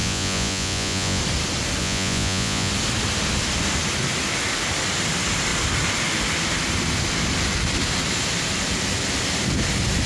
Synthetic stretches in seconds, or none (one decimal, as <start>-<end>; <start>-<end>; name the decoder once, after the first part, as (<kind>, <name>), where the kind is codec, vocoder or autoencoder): 0.0-1.2 (vocoder, Vocos); 1.8-2.7